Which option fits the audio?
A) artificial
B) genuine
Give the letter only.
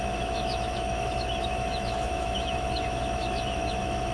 A